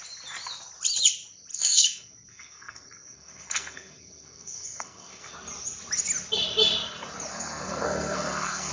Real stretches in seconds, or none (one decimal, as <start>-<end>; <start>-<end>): 0.0-1.5; 5.3-7.3